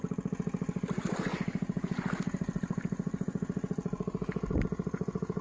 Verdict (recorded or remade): recorded